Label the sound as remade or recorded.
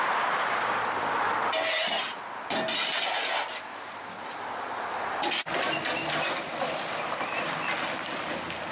recorded